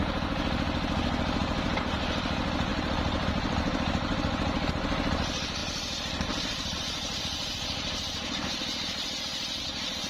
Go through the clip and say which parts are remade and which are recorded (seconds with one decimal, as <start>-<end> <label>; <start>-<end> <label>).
0.0-2.7 recorded; 2.7-4.7 remade; 4.7-5.6 recorded; 5.6-9.6 remade; 9.6-10.1 recorded